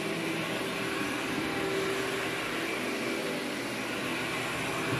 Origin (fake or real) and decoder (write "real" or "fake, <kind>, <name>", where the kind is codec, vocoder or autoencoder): real